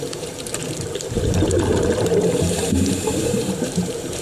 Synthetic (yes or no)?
yes